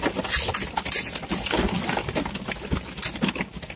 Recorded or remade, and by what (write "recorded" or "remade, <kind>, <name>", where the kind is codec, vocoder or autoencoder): recorded